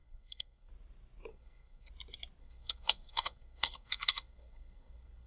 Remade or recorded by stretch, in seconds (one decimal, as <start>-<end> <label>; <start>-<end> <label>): 0.0-0.7 remade; 0.7-1.3 recorded; 1.3-1.9 remade; 1.9-2.4 recorded; 2.4-5.3 remade